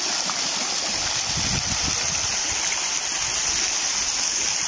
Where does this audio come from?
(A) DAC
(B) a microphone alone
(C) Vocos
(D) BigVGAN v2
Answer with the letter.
B